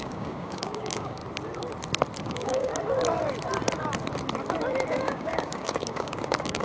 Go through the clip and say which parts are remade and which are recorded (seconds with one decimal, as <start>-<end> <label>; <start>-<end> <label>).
0.0-1.2 remade; 1.2-2.2 recorded; 2.2-2.7 remade; 2.7-4.9 recorded; 4.9-6.6 remade